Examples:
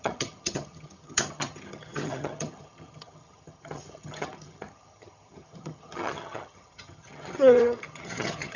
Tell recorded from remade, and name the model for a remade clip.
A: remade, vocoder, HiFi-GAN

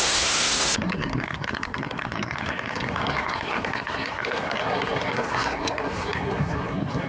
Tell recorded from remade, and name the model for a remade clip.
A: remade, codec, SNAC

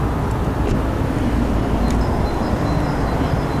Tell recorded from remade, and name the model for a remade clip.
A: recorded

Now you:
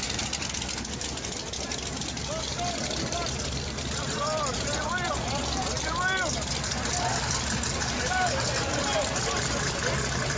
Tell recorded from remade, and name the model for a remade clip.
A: recorded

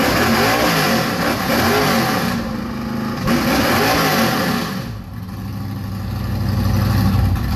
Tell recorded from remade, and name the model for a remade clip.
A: recorded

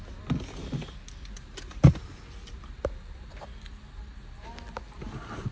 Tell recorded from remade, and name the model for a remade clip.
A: recorded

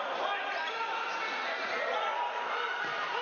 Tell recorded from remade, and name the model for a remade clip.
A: recorded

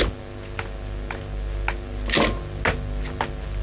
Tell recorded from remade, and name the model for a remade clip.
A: recorded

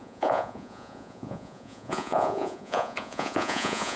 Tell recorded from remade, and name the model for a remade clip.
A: remade, vocoder, Vocos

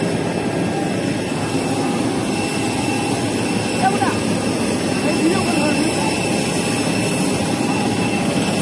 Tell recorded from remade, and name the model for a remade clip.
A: recorded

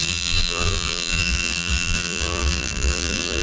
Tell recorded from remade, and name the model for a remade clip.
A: remade, vocoder, BigVGAN v2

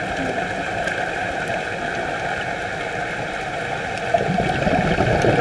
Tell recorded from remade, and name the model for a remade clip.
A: recorded